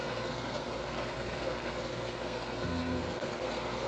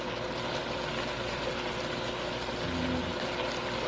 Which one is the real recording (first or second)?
second